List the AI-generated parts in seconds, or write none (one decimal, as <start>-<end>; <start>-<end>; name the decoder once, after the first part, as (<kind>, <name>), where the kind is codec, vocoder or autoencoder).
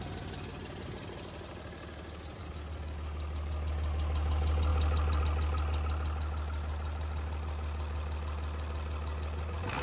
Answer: none